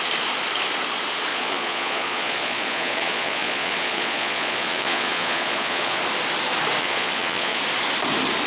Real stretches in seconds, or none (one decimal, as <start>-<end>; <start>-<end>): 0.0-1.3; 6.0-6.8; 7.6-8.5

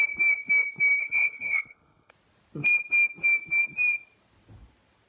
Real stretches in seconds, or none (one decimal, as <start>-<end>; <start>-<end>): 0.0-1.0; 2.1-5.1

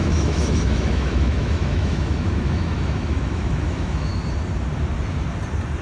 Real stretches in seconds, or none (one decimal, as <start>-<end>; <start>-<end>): 4.1-5.8

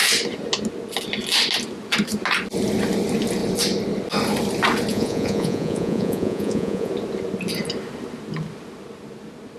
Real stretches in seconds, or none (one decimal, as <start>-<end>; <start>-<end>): 0.0-4.9; 6.9-9.6